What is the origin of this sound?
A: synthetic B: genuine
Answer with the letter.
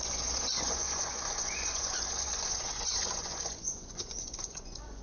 A